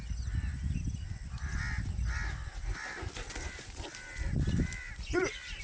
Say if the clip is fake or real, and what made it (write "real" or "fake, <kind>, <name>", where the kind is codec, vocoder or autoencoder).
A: real